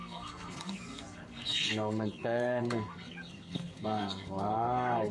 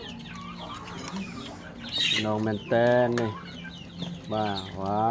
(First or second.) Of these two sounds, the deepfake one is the first